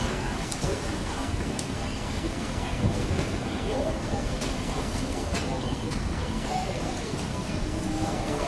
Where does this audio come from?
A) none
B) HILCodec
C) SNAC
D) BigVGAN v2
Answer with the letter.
C